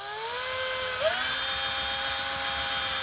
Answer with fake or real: real